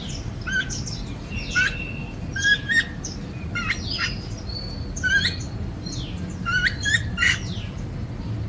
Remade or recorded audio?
recorded